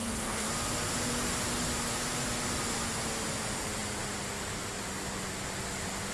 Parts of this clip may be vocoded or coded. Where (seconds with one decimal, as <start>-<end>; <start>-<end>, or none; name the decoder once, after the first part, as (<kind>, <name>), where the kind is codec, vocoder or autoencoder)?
0.0-0.5 (codec, SNAC)